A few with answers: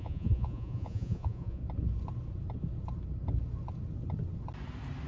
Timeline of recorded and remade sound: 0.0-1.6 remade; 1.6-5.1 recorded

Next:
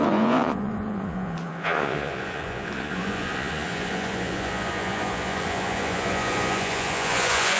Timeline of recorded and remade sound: 0.0-7.6 remade

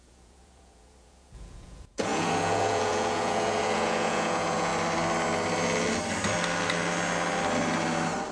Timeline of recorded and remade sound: 0.0-4.7 remade; 4.7-8.3 recorded

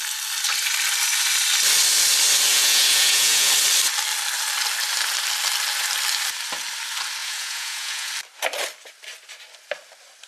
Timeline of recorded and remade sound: 0.0-2.5 recorded; 2.5-3.5 remade; 3.5-7.2 recorded; 7.2-8.1 remade; 8.1-10.3 recorded

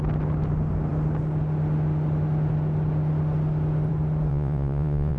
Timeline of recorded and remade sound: 0.0-4.3 recorded; 4.3-5.2 remade